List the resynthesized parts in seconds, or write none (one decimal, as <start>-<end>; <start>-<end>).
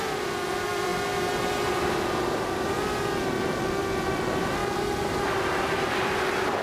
0.0-0.9; 3.8-4.6; 5.9-6.6